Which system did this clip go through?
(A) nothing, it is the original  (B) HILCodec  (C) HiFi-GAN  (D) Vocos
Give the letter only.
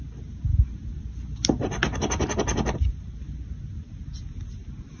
A